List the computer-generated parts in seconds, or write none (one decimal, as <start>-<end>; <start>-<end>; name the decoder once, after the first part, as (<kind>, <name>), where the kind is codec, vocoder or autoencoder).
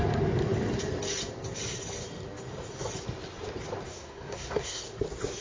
3.9-4.8 (codec, SNAC)